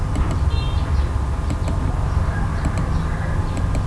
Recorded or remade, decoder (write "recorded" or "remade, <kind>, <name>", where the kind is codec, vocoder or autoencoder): recorded